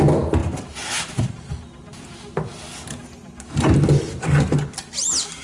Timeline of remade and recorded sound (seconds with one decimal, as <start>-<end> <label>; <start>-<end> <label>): 0.0-5.4 recorded